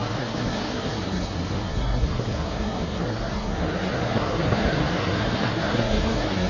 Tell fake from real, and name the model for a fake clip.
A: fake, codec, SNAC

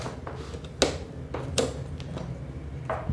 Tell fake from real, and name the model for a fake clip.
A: real